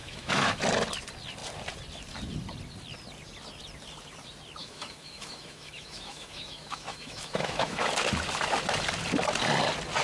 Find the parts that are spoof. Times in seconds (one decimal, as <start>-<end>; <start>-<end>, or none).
0.0-0.6; 4.6-7.9